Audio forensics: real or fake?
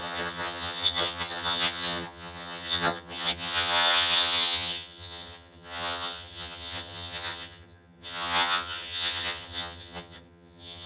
fake